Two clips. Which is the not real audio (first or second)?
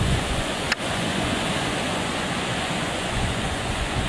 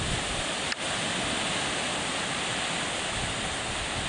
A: first